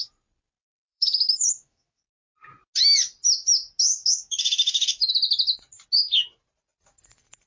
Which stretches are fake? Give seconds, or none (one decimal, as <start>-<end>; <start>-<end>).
0.6-2.0; 3.9-5.1